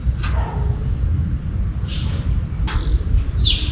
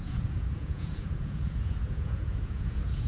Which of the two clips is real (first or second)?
first